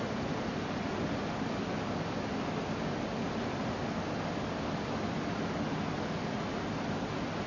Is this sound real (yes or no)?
yes